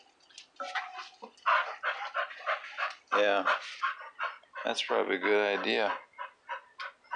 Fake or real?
real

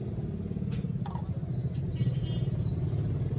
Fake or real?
real